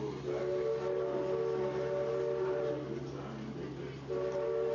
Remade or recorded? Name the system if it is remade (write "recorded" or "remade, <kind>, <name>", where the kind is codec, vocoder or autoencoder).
recorded